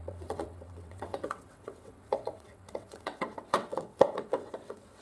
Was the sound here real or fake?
fake